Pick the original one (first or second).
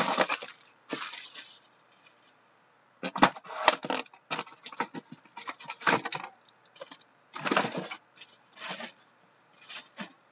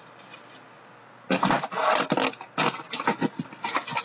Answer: second